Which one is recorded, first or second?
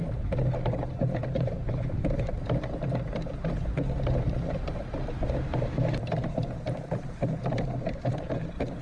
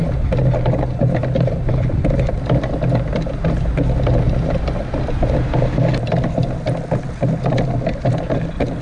second